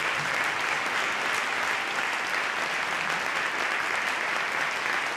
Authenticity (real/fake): real